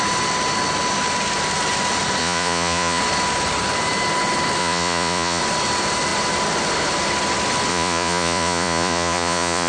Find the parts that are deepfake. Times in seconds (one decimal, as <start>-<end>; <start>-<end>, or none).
2.2-3.0; 4.6-5.4; 7.7-9.7